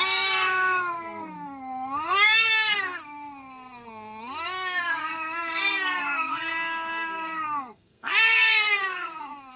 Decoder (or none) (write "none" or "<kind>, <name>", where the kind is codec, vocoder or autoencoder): codec, SNAC